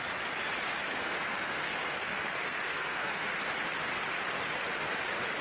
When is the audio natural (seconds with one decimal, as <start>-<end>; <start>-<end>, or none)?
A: 0.0-0.8; 3.3-5.4